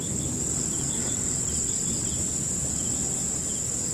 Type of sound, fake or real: real